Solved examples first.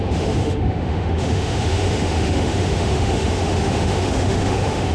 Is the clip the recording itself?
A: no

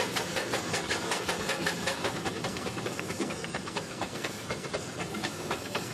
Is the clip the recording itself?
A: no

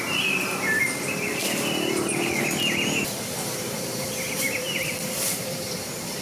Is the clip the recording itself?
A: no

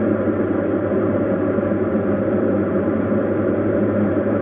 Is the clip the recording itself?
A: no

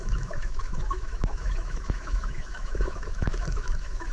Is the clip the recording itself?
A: no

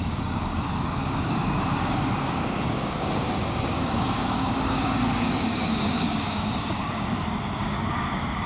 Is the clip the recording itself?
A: no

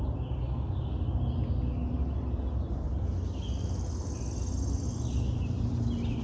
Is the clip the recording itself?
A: yes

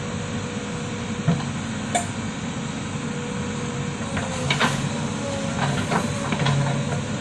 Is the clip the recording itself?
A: yes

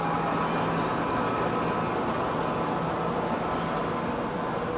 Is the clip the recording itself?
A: yes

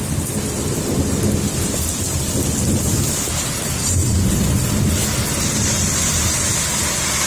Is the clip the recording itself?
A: yes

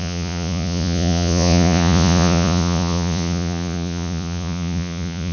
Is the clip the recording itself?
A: no